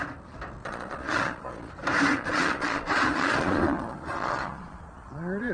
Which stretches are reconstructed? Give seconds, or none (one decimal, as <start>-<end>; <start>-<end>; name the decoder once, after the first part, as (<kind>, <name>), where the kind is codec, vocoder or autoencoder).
0.6-1.7 (vocoder, Vocos); 2.1-5.5